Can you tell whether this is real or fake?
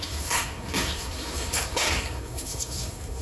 fake